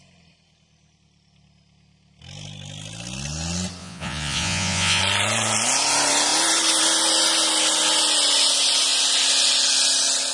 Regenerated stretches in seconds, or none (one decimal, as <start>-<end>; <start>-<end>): 3.8-5.0